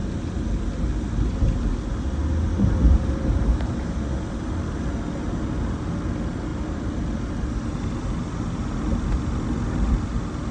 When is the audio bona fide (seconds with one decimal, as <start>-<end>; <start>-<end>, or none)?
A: 0.0-10.5